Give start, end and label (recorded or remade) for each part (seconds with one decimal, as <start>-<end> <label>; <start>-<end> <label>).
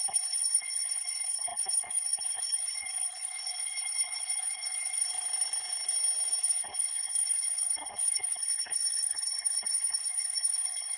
0.0-5.1 remade; 5.1-6.4 recorded; 6.4-11.0 remade